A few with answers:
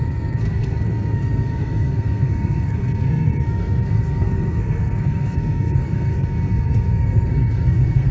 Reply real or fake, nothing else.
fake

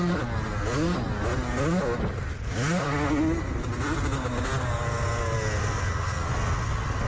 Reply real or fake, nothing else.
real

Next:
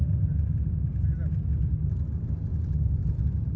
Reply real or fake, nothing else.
real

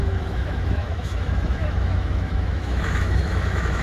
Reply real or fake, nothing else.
fake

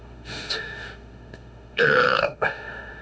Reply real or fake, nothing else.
fake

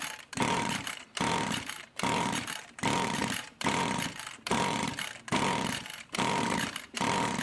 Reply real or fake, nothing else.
fake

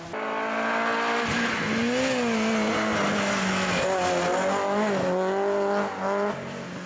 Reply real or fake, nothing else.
real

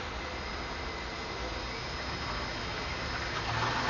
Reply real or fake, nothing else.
real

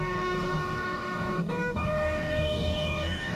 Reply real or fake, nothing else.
fake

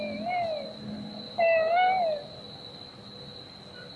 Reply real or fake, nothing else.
real